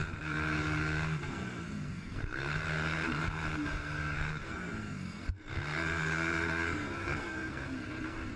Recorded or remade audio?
remade